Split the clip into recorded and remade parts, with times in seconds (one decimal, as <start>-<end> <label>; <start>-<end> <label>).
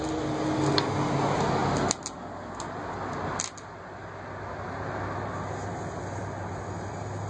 0.0-7.3 recorded